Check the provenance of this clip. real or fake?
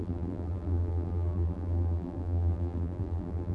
fake